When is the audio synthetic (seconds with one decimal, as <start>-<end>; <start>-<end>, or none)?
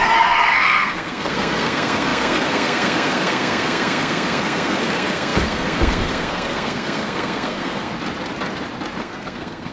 0.0-7.9; 9.0-9.7